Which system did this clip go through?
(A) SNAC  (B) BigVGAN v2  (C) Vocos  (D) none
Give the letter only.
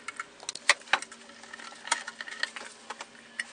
D